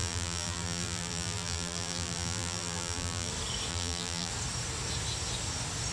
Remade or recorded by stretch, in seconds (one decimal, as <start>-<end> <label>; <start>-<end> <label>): 0.0-3.3 remade; 3.3-3.7 recorded; 3.7-4.3 remade; 4.3-5.9 recorded